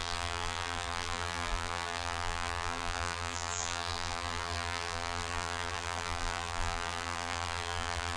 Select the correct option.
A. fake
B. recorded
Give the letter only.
A